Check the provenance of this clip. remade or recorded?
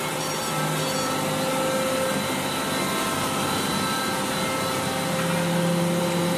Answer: recorded